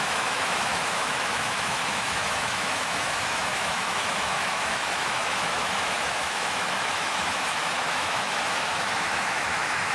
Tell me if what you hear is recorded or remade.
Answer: remade